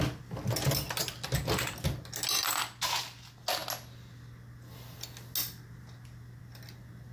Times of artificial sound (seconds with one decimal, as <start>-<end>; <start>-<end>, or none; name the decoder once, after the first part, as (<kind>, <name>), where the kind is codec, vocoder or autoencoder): none